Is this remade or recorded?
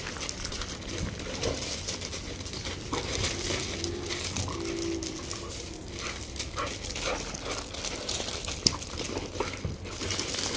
recorded